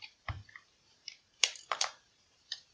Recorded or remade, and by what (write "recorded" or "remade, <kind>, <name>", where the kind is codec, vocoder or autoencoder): remade, vocoder, BigVGAN v2